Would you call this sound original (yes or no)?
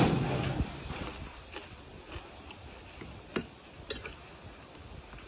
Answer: yes